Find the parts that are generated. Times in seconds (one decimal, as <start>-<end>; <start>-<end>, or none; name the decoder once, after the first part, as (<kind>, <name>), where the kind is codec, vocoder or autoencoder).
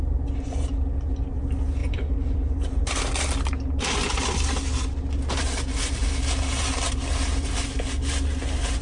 1.8-3.0 (vocoder, BigVGAN v2)